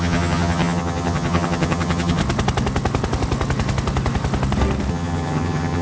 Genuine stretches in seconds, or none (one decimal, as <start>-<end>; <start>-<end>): 2.2-4.9